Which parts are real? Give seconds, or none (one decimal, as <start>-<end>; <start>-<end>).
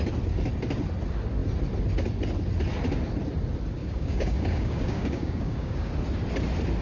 0.0-3.8; 5.9-6.8